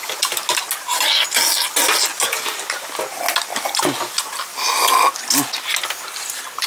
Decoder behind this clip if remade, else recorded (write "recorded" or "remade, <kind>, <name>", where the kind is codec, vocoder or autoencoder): recorded